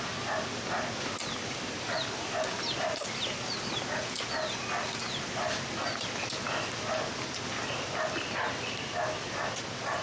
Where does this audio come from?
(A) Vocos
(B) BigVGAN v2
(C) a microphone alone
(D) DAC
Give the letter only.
C